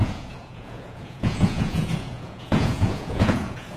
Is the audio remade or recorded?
remade